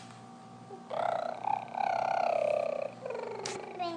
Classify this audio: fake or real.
real